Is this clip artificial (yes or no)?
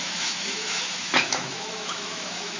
yes